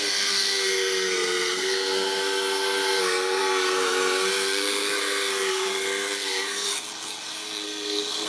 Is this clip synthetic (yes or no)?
yes